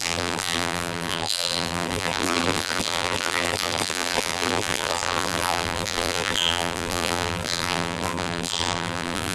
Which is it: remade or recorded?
remade